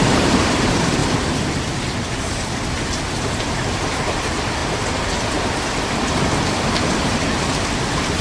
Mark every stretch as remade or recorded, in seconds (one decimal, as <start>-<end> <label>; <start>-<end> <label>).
0.0-1.0 remade; 1.0-3.4 recorded; 3.4-4.6 remade; 4.6-5.4 recorded; 5.4-8.2 remade